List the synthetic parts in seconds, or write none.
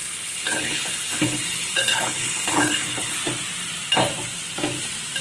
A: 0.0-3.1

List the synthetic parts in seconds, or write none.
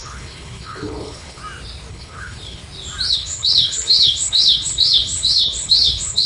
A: 0.0-1.4; 1.9-2.6; 3.1-6.3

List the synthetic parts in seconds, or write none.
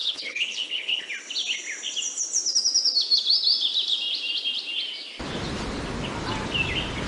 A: 0.0-1.1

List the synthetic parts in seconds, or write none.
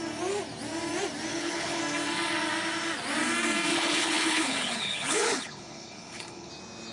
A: 1.3-1.8; 3.7-6.5